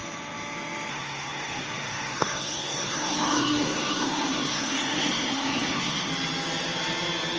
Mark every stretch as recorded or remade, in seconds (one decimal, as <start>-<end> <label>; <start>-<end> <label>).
0.0-0.9 recorded; 0.9-6.1 remade; 6.1-7.4 recorded